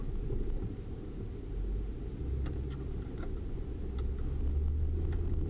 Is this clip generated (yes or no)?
no